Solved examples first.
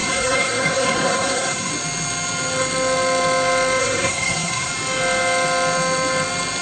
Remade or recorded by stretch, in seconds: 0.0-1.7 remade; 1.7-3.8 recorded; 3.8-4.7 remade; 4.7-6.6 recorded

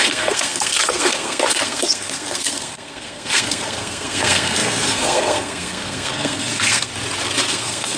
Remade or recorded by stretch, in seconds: 0.0-6.9 remade; 6.9-7.5 recorded; 7.5-8.0 remade

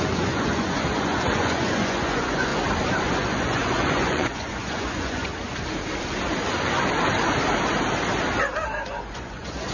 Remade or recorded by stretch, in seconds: 0.0-2.5 remade; 2.5-3.0 recorded; 3.0-5.3 remade; 5.3-8.9 recorded; 8.9-9.7 remade

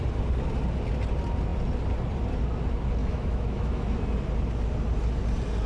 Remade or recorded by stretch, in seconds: 0.0-3.0 recorded; 3.0-3.8 remade; 3.8-5.7 recorded

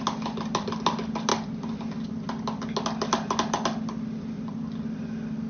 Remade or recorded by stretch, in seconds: 0.0-5.5 recorded